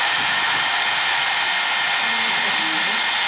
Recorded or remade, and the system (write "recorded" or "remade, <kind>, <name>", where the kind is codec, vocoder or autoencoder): recorded